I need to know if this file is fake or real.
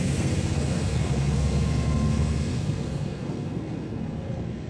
fake